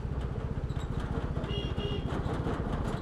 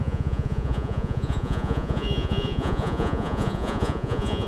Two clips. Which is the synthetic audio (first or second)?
second